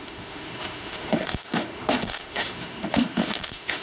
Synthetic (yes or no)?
yes